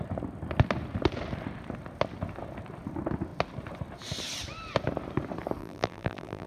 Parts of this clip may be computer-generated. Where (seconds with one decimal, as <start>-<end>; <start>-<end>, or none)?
5.6-6.5

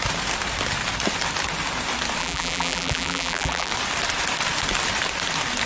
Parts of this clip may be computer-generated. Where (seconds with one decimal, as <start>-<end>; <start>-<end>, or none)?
2.2-3.7

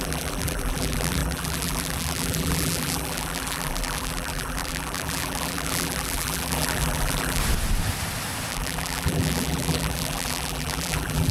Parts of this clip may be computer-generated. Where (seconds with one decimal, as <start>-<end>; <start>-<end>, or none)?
0.0-7.4; 8.5-11.3

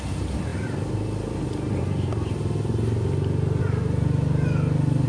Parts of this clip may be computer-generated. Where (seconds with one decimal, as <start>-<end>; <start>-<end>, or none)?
none

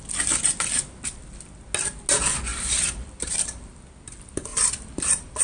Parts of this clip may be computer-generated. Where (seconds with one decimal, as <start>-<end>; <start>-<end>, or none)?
2.5-3.7; 4.5-5.4